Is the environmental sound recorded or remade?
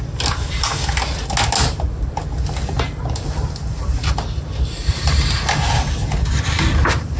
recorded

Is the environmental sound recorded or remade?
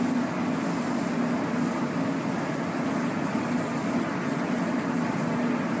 recorded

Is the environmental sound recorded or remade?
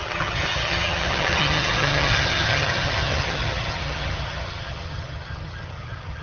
remade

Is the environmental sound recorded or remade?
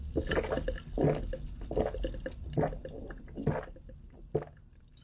recorded